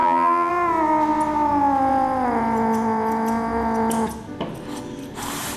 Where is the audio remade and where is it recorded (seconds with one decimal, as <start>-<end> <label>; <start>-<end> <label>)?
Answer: 0.0-0.5 remade; 0.5-5.6 recorded

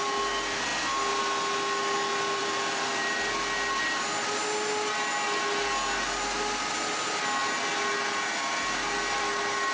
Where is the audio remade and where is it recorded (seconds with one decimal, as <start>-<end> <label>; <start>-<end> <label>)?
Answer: 0.0-2.4 recorded; 2.4-3.1 remade; 3.1-9.7 recorded

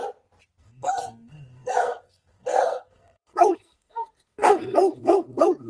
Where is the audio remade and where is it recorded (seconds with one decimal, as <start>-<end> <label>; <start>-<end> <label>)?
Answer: 0.0-0.6 recorded; 0.6-5.7 remade

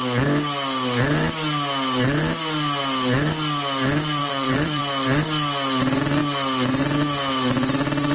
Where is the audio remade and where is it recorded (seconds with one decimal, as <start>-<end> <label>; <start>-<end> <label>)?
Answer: 0.0-4.2 recorded; 4.2-4.8 remade; 4.8-8.1 recorded

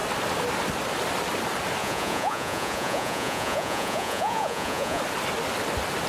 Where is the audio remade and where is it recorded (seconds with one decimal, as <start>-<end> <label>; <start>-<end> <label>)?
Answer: 0.0-1.8 recorded; 1.8-5.0 remade; 5.0-6.1 recorded

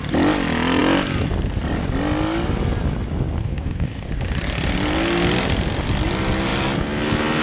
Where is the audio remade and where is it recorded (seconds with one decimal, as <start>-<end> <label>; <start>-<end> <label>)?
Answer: 0.0-3.4 recorded; 3.4-4.1 remade; 4.1-7.4 recorded